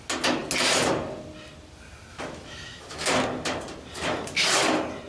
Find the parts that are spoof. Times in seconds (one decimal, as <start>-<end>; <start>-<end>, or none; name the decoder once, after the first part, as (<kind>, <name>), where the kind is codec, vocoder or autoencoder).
2.1-3.1 (autoencoder, DAC-VAE)